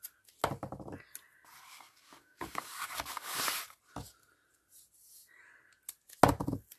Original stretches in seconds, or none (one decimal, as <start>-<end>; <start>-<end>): 0.0-1.7; 3.4-6.8